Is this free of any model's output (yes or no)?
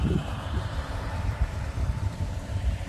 no